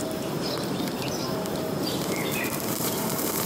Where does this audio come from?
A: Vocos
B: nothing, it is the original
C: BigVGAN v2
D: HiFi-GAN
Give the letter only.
C